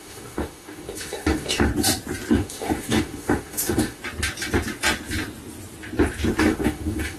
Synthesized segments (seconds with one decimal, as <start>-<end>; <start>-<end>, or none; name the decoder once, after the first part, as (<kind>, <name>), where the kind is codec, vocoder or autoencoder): 0.0-1.7 (autoencoder, DAC-VAE); 2.3-4.0; 6.4-7.2